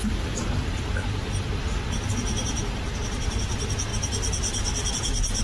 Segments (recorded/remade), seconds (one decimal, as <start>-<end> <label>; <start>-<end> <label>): 0.0-5.4 recorded